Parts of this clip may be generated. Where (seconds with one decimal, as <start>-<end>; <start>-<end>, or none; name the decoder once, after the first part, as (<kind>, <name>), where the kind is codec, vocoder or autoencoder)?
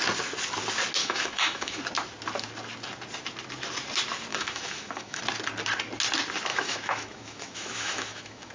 1.0-1.8 (autoencoder, DAC-VAE); 4.3-5.2; 6.5-8.5